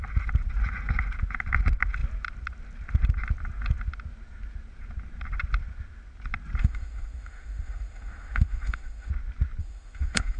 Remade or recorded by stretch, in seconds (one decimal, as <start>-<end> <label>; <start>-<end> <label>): 0.0-6.6 recorded; 6.6-9.1 remade; 9.1-9.6 recorded; 9.6-10.4 remade